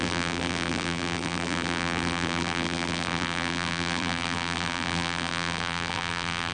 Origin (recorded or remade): remade